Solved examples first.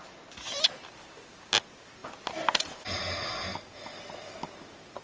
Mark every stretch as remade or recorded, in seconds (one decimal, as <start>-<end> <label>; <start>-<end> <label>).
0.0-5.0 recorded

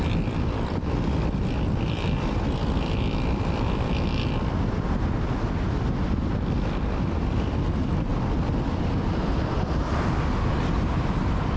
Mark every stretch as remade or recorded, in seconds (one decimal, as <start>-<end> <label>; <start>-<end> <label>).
0.0-11.6 recorded

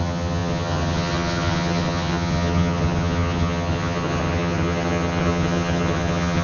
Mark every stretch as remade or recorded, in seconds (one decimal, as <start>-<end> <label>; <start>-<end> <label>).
0.0-6.4 remade

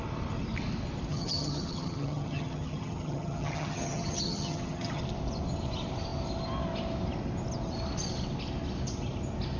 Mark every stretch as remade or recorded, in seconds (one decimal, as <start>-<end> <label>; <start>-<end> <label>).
0.0-1.1 recorded; 1.1-5.0 remade; 5.0-9.6 recorded

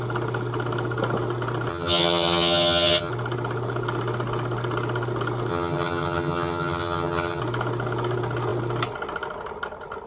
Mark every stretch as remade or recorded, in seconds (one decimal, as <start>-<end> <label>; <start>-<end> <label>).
0.0-1.7 recorded; 1.7-3.1 remade; 3.1-5.5 recorded; 5.5-7.4 remade; 7.4-10.1 recorded

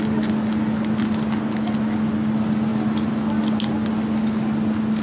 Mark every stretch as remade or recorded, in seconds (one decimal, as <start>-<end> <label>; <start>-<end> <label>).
0.0-5.0 recorded

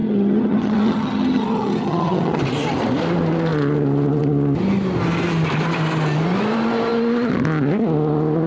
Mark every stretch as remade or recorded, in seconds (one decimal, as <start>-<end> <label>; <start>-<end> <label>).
0.0-2.4 remade; 2.4-8.5 recorded

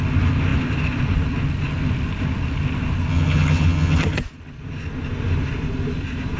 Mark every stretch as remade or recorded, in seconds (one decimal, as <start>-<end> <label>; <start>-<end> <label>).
0.0-3.1 recorded; 3.1-4.2 remade; 4.2-6.4 recorded